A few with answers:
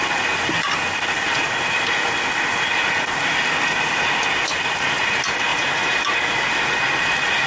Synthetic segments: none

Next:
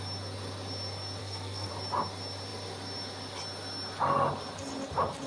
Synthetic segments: 1.2-1.7 (codec, SNAC)

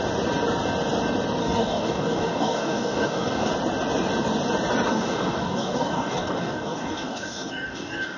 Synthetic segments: 1.4-3.5 (codec, DAC); 4.9-8.2

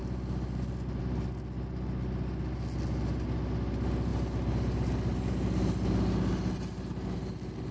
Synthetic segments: none